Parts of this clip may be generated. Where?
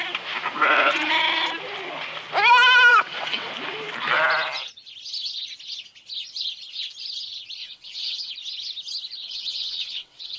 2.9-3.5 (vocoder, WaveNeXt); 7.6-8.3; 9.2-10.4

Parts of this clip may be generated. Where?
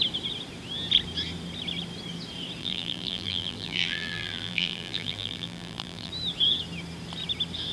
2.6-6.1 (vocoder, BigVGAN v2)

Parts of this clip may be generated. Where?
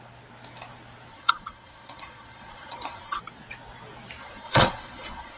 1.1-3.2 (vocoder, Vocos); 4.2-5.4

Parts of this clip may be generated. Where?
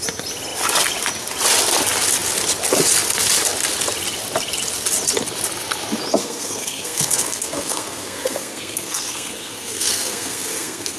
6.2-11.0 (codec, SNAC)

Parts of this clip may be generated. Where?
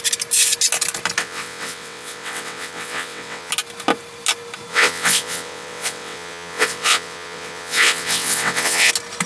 1.2-3.5 (vocoder, WaveNeXt); 4.7-8.9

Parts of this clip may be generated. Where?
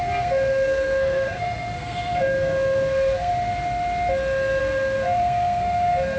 0.0-3.3 (codec, SNAC); 4.6-6.2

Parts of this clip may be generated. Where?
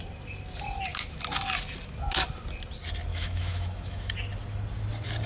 3.1-4.1 (autoencoder, DAC-VAE)